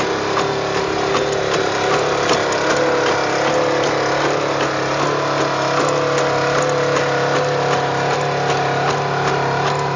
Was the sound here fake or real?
real